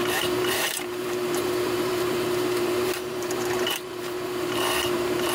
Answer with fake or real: fake